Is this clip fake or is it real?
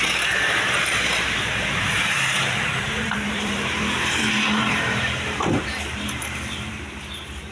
fake